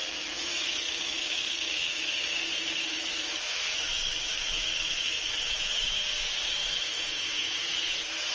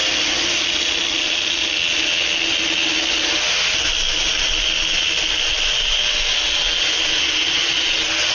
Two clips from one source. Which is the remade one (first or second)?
first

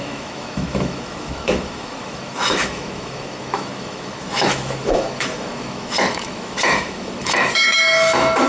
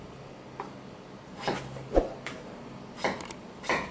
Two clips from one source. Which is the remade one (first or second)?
first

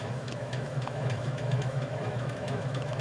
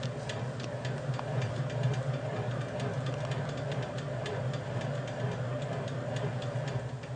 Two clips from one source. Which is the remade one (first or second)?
first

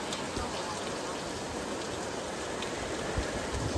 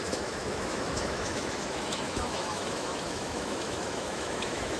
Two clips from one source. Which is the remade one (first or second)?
second